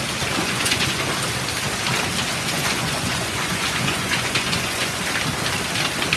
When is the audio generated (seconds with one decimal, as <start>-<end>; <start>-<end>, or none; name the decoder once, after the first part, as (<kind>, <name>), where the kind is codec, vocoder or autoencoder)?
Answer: 0.4-1.0 (vocoder, Vocos); 2.3-5.0